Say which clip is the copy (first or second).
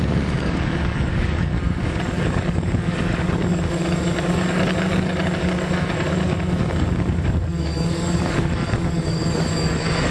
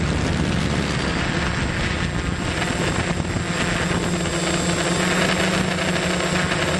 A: first